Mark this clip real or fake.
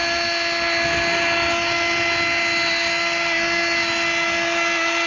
real